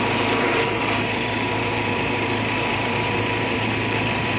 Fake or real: fake